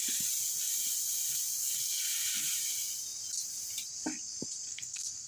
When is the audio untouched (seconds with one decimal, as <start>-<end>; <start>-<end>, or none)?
0.0-4.7

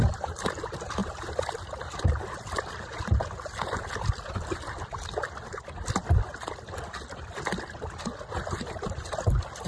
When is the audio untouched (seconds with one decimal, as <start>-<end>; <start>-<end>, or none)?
0.0-9.7

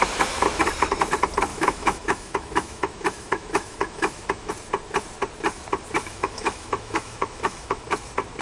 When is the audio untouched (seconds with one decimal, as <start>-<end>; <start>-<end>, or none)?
0.0-1.5; 4.5-6.0; 7.8-8.4

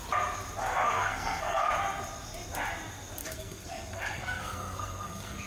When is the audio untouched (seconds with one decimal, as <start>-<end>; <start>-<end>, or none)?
0.0-0.6; 1.7-3.2

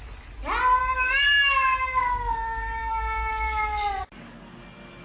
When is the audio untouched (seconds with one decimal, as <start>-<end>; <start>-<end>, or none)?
0.0-0.8; 2.9-5.0